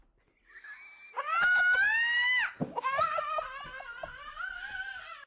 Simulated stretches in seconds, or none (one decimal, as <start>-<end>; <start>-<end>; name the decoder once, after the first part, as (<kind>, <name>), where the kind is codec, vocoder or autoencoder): 2.6-3.2 (autoencoder, DAC-VAE)